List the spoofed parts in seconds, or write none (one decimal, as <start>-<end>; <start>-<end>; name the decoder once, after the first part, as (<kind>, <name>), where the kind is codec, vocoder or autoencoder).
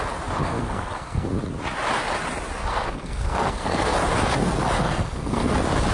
0.4-1.3 (codec, SNAC); 2.7-3.9; 4.8-5.5